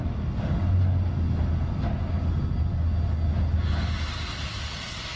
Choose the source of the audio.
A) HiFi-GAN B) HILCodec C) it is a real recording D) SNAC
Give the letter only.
C